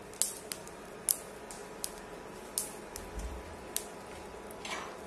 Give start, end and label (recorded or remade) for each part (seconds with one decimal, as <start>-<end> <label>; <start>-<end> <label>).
0.0-5.1 recorded